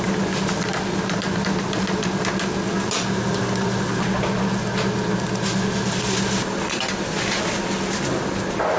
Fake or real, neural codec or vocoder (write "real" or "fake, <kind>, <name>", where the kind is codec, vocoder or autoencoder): real